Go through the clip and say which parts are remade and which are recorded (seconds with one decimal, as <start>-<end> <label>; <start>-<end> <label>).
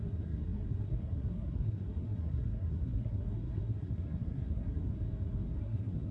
0.0-4.9 remade; 4.9-5.6 recorded; 5.6-6.1 remade